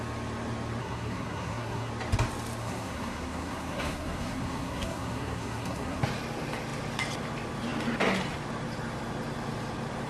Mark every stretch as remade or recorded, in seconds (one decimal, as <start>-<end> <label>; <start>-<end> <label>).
0.0-0.8 recorded; 0.8-1.9 remade; 1.9-2.6 recorded; 2.6-6.0 remade; 6.0-10.1 recorded